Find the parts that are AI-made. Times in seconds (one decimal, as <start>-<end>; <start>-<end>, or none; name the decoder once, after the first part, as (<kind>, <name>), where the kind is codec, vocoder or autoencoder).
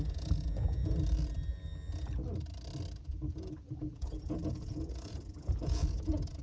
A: 0.0-0.8 (vocoder, Vocos); 3.0-6.4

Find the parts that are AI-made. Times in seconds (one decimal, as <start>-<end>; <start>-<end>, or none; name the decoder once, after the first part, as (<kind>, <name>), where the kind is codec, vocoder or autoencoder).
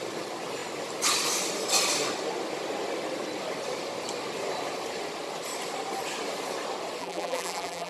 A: 7.0-7.9 (vocoder, BigVGAN v2)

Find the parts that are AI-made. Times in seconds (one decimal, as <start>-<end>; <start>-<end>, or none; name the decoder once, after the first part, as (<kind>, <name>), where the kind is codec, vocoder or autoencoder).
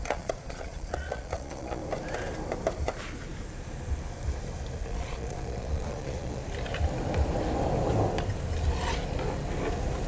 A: 0.0-1.8 (vocoder, Vocos); 4.8-6.4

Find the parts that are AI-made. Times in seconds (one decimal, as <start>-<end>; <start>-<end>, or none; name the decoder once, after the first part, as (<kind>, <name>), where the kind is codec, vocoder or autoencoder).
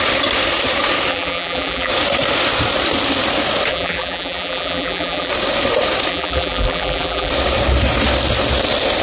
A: 1.1-1.9 (vocoder, BigVGAN v2); 3.7-5.3; 6.1-7.3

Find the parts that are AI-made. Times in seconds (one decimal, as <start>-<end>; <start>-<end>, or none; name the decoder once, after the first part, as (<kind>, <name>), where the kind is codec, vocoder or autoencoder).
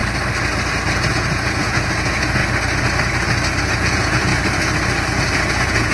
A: 1.1-2.4 (vocoder, Vocos); 3.6-4.3; 5.5-5.9